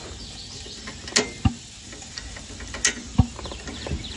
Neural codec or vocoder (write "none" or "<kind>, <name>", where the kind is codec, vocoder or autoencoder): none